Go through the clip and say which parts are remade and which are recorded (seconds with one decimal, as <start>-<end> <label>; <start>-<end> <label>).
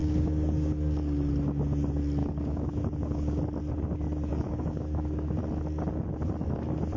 0.0-1.3 remade; 1.3-2.2 recorded; 2.2-3.4 remade; 3.4-4.3 recorded; 4.3-5.4 remade; 5.4-7.0 recorded